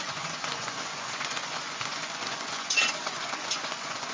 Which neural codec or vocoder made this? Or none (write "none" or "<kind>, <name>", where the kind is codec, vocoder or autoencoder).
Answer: vocoder, Vocos